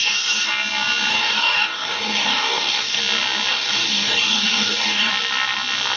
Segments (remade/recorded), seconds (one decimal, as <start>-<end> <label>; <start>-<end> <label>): 0.0-0.5 remade; 0.5-1.1 recorded; 1.1-3.0 remade; 3.0-3.5 recorded; 3.5-5.1 remade; 5.1-6.0 recorded